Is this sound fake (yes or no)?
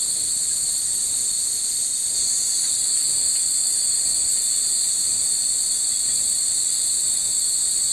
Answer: no